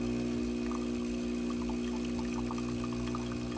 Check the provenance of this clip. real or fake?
real